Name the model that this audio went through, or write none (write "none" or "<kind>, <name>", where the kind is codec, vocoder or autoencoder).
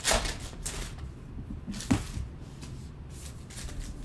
none